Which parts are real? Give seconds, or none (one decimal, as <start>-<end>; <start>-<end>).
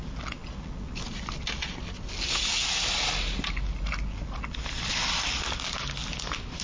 0.0-6.6